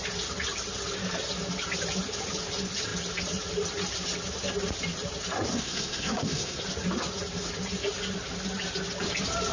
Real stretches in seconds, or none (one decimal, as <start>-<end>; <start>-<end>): 0.0-5.5; 6.6-9.5